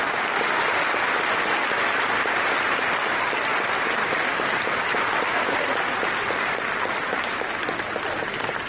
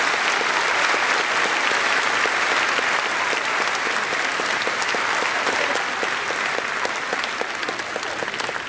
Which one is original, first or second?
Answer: second